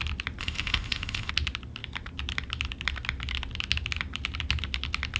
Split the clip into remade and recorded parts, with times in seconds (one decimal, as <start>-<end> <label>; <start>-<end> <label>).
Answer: 0.0-0.4 recorded; 0.4-1.3 remade; 1.3-5.2 recorded

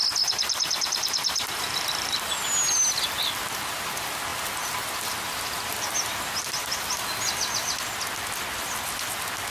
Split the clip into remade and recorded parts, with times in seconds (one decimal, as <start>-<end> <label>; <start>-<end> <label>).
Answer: 0.0-9.5 recorded

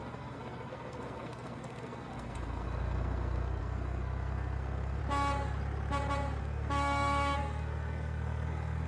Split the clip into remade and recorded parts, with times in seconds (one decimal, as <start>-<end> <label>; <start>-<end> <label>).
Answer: 0.0-5.0 remade; 5.0-6.4 recorded; 6.4-8.9 remade

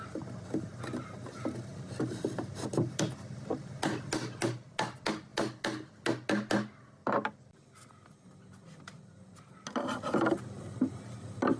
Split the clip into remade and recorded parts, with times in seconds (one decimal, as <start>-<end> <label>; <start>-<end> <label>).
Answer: 0.0-11.6 recorded

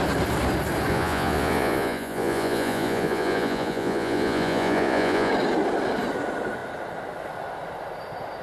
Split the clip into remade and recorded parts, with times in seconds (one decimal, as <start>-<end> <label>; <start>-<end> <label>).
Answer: 0.0-0.9 recorded; 0.9-5.3 remade; 5.3-8.4 recorded

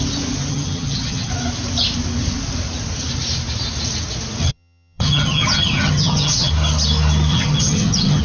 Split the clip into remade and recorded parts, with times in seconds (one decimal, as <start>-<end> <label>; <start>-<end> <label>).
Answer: 0.0-0.5 recorded; 0.5-1.3 remade; 1.3-4.4 recorded; 4.4-6.5 remade; 6.5-7.3 recorded; 7.3-8.2 remade